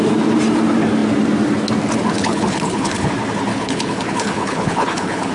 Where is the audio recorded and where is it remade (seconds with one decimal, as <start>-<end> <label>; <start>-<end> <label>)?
0.0-2.2 recorded; 2.2-3.1 remade; 3.1-3.5 recorded; 3.5-5.3 remade